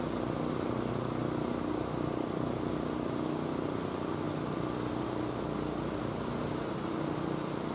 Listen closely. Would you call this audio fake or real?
real